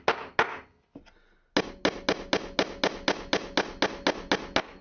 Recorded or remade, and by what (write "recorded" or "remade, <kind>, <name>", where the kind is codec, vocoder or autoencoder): recorded